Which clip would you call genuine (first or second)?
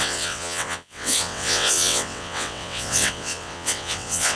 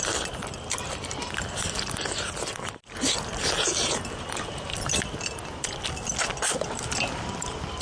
second